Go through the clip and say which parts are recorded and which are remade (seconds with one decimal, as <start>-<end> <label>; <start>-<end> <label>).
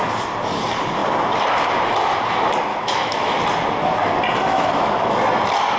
0.0-2.7 recorded; 2.7-3.4 remade; 3.4-4.5 recorded; 4.5-5.2 remade; 5.2-5.8 recorded